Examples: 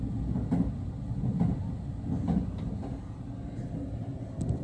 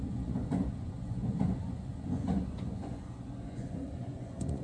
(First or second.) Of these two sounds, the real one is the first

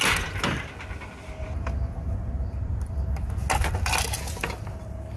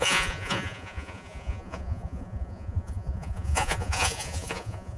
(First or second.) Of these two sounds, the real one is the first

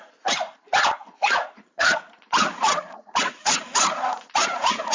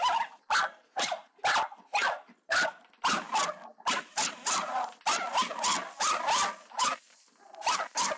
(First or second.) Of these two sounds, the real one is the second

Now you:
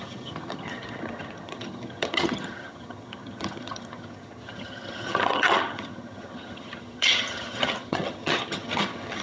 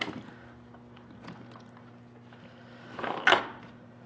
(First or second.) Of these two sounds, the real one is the second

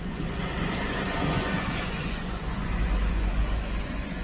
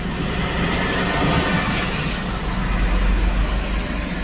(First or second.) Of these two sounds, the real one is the second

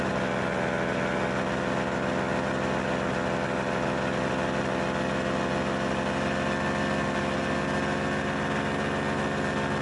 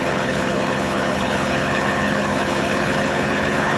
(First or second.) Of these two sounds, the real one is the first